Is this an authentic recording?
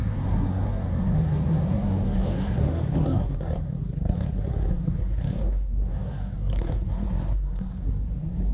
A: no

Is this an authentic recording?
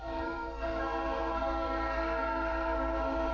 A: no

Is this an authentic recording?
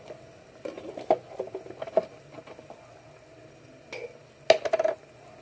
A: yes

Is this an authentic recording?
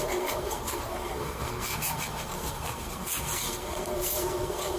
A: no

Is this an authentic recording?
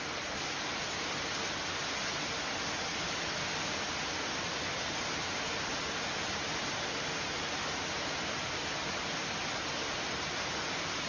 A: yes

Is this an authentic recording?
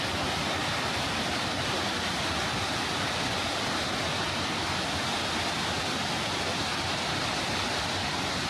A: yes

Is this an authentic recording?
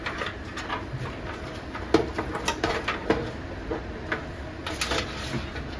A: yes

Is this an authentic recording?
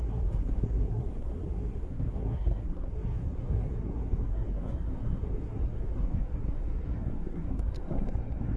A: no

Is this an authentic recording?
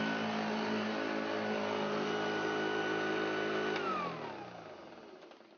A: yes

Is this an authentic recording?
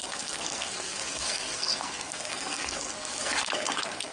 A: no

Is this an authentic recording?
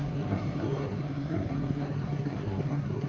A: no